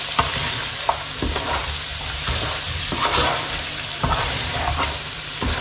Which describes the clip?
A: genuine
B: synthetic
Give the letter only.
B